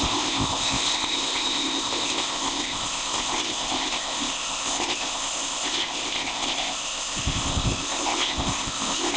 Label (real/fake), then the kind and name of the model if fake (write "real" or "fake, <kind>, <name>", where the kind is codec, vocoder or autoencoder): fake, codec, ZipCodec